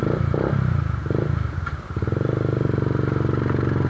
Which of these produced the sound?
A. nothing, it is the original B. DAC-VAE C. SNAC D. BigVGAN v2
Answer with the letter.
A